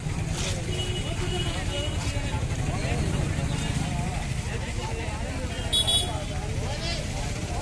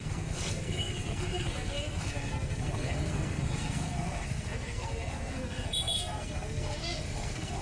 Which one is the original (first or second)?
first